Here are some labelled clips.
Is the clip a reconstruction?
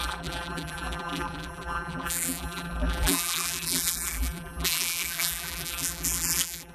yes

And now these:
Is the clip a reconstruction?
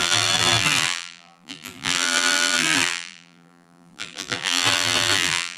yes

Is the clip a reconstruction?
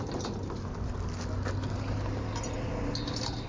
no